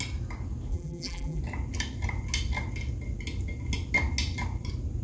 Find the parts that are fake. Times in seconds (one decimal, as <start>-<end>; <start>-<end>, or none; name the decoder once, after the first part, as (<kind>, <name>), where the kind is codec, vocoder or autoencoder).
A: 0.7-1.4 (vocoder, BigVGAN v2)